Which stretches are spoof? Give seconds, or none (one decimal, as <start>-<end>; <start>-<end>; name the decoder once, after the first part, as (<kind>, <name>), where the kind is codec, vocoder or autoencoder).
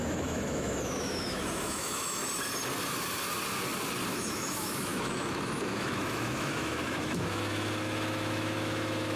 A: 0.0-2.2 (autoencoder, DAC-VAE); 4.1-9.2